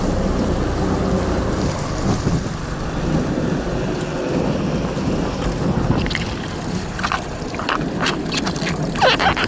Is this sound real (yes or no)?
yes